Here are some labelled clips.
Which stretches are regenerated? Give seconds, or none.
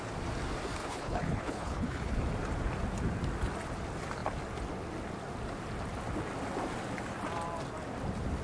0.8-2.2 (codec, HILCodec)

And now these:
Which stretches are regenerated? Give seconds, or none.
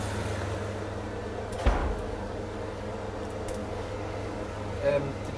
1.8-2.9 (codec, DAC); 3.6-4.9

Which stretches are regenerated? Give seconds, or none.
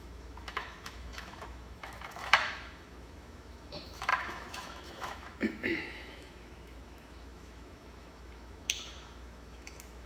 0.0-10.1 (autoencoder, DAC-VAE)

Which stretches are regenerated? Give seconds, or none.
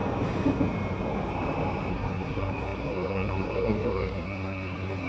1.9-5.1 (codec, SNAC)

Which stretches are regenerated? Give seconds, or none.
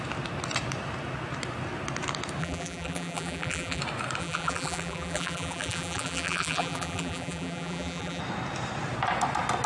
2.4-3.8 (vocoder, BigVGAN v2); 4.2-8.2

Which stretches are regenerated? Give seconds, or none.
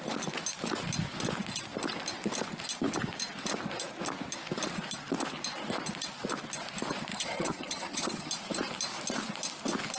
7.1-8.3 (vocoder, HiFi-GAN)